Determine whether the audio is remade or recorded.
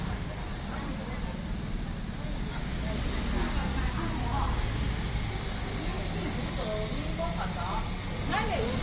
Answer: recorded